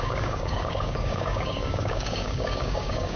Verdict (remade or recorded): remade